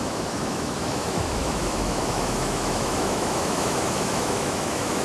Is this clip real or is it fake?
fake